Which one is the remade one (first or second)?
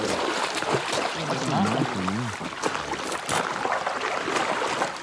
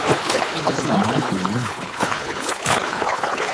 second